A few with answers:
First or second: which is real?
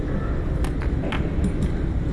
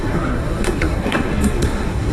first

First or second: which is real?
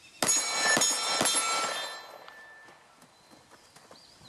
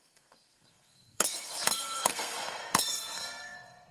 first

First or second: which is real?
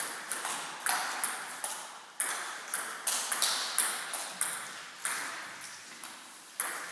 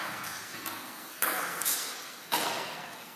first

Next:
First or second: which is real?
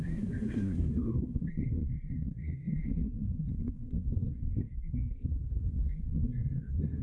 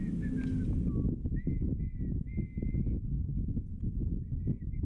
second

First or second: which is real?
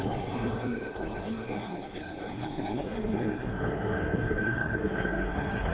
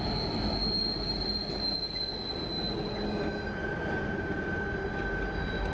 second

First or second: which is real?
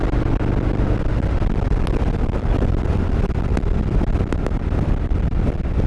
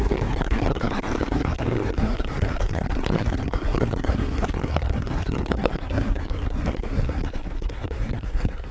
first